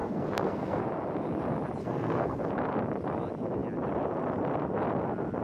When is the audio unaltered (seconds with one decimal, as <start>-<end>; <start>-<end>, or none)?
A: 0.8-1.8; 2.5-5.4